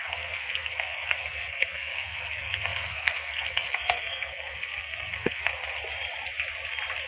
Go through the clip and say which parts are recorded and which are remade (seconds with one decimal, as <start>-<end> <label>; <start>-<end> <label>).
0.0-5.5 remade; 5.5-7.1 recorded